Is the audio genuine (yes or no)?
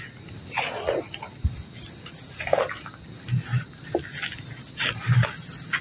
yes